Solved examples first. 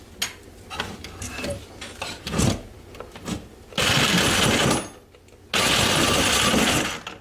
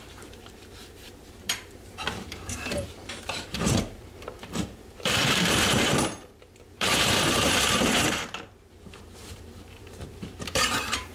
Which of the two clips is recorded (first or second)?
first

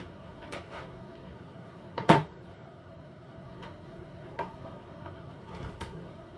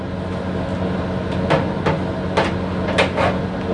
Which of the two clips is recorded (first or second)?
second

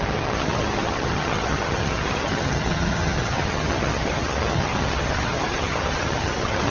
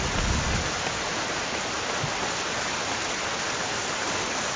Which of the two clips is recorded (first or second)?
second